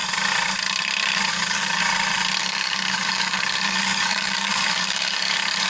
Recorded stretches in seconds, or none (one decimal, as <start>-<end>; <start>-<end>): 0.0-1.3; 1.8-2.4